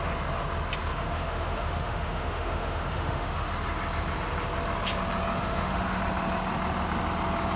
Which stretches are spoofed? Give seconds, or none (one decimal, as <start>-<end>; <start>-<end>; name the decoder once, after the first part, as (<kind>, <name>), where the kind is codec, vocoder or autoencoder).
0.9-3.5 (autoencoder, DAC-VAE); 5.4-6.0

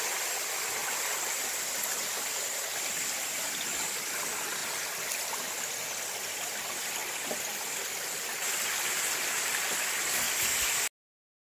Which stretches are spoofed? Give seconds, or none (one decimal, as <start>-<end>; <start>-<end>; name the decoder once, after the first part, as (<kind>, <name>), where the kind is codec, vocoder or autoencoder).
none